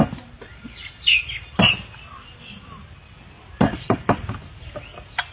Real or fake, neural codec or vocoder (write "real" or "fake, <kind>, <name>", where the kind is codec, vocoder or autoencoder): real